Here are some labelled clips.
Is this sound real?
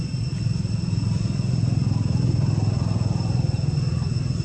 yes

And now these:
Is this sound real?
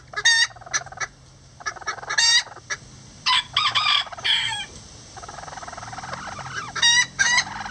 yes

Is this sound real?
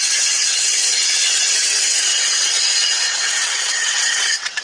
no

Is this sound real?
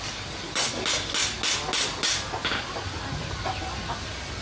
yes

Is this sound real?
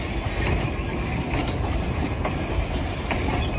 yes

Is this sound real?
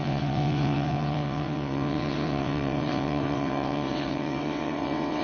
no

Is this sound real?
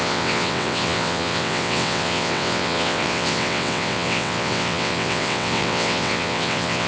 no